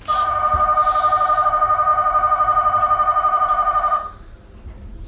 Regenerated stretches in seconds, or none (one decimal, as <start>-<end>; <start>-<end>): 0.8-1.5